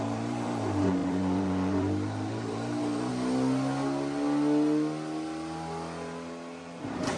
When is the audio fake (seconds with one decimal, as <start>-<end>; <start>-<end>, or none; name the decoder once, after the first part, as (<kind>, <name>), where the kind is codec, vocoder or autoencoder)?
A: 0.0-3.1 (vocoder, BigVGAN v2); 6.6-7.2